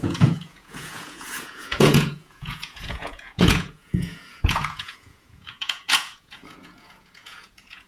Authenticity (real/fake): fake